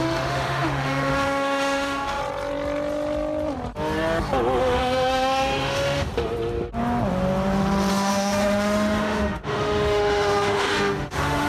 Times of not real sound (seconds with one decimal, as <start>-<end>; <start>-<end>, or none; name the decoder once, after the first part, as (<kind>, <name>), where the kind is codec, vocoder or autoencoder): 0.0-2.2 (autoencoder, DAC-VAE); 4.6-6.1; 7.9-11.5